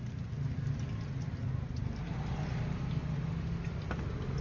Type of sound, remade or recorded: recorded